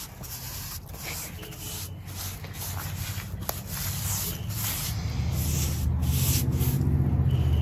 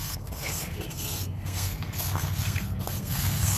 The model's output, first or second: second